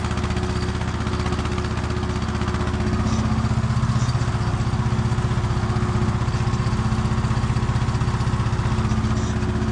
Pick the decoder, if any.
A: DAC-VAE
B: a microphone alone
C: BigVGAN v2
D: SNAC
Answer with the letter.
B